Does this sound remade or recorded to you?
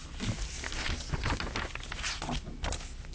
recorded